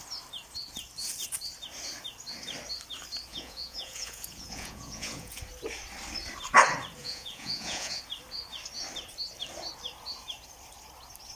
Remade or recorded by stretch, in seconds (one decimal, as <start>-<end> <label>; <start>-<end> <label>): 0.0-3.3 recorded; 3.3-5.4 remade; 5.4-7.0 recorded; 7.0-8.0 remade; 8.0-11.4 recorded